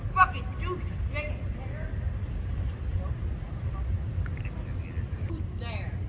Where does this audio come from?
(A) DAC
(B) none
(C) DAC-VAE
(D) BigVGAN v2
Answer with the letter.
B